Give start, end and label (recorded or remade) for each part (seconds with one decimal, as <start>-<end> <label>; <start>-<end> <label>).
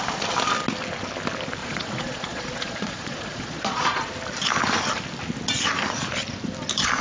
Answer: 0.0-1.6 recorded; 1.6-4.1 remade; 4.1-7.0 recorded